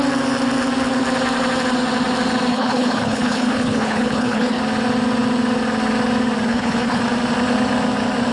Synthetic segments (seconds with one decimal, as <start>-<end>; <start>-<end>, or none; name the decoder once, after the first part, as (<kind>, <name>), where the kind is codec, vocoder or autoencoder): 2.5-4.6 (codec, HILCodec); 6.5-7.0